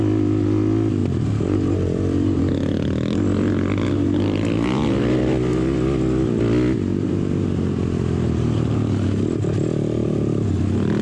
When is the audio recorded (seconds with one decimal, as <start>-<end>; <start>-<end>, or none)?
0.0-1.0; 2.4-6.9; 8.7-11.0